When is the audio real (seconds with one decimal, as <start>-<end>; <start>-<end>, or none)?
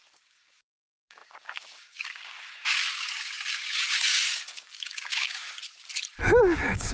5.6-6.4